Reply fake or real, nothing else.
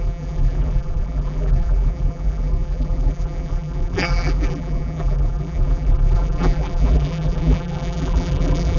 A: fake